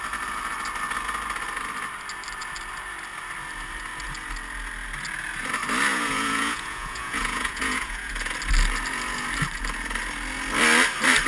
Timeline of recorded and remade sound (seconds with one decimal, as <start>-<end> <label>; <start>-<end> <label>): 0.0-5.9 recorded; 5.9-8.1 remade; 8.1-11.3 recorded